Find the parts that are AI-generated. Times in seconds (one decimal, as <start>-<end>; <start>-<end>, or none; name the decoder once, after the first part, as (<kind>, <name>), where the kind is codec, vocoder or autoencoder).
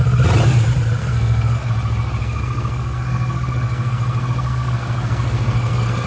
1.0-1.7 (codec, SNAC); 2.2-6.1